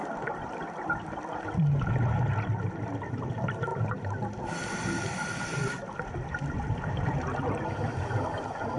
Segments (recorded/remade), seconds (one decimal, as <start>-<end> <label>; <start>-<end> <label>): 0.0-1.2 remade; 1.2-3.7 recorded; 3.7-7.9 remade; 7.9-8.8 recorded

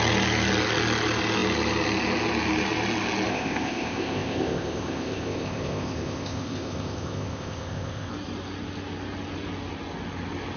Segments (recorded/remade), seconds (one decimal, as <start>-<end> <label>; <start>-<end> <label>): 0.0-3.3 recorded; 3.3-8.1 remade; 8.1-10.6 recorded

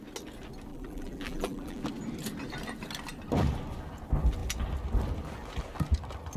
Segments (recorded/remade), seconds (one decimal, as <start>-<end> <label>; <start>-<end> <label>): 0.0-0.7 recorded; 0.7-1.8 remade; 1.8-6.4 recorded